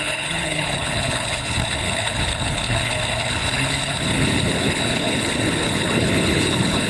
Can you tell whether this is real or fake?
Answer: fake